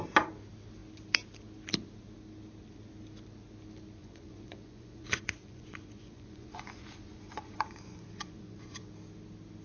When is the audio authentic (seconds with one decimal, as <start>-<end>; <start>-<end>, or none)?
0.0-4.0; 8.9-9.6